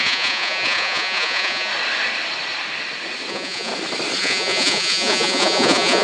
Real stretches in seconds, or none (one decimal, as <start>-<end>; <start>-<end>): 1.7-3.3; 3.7-4.2